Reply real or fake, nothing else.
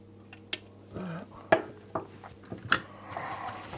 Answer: real